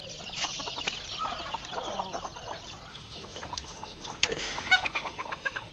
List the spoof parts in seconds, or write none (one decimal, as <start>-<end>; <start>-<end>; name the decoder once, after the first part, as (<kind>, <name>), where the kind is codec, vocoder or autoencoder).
2.9-5.7 (autoencoder, DAC-VAE)